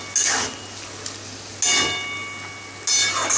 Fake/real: real